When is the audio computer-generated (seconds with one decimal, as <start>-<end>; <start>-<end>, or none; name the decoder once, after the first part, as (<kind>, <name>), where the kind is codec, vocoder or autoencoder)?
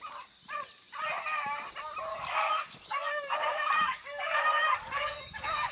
2.1-5.7 (codec, DAC)